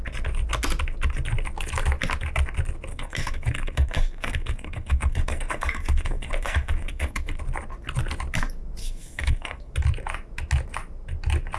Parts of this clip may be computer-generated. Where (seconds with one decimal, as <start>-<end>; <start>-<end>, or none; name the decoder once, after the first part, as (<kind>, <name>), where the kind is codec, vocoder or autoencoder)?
2.9-7.4 (codec, SNAC); 8.8-9.7

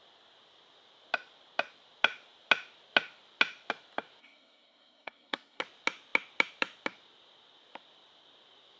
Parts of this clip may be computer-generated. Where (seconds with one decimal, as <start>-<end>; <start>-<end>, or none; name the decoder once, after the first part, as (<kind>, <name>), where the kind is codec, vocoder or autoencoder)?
4.2-5.6 (codec, SNAC)